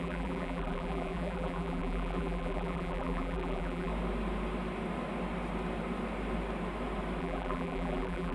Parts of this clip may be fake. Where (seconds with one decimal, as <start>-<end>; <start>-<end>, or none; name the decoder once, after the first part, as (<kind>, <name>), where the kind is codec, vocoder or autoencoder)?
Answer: 0.0-3.9 (vocoder, BigVGAN v2); 7.2-8.3

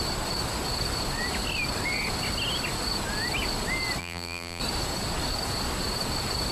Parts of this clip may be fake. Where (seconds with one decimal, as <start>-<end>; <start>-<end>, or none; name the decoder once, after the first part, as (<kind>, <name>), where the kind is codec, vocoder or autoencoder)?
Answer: 4.0-4.6 (vocoder, BigVGAN v2)

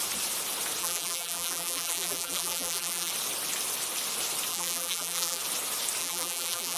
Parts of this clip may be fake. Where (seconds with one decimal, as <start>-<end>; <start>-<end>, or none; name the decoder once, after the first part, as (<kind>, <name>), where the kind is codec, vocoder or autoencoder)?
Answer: 0.8-3.1 (vocoder, BigVGAN v2); 4.5-5.4; 6.0-6.8

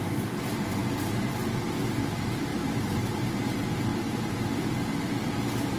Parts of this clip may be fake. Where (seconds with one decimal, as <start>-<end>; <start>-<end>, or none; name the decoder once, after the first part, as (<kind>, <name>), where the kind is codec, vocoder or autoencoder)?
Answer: 2.5-3.4 (vocoder, BigVGAN v2); 3.9-4.6

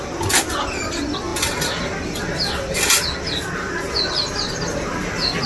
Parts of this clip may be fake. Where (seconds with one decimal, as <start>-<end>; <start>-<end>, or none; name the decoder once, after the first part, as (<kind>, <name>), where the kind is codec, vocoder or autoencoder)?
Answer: none